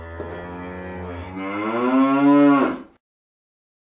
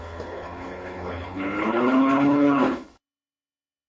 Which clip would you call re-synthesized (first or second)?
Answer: second